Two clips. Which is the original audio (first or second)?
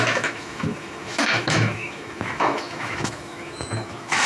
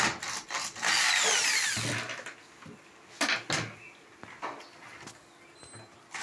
second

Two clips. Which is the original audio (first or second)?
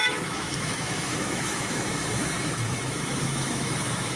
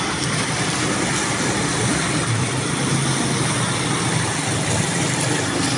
second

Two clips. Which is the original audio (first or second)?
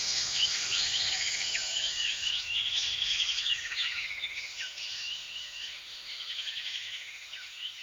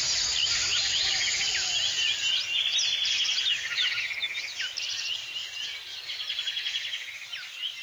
second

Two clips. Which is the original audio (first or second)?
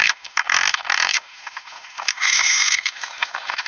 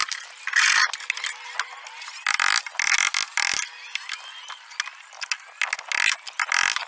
second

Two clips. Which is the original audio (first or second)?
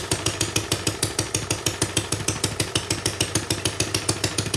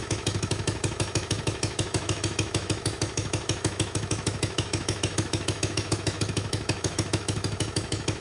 first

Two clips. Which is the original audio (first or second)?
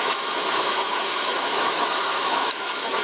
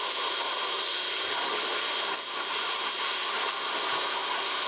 second